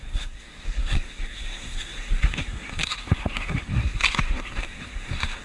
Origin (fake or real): fake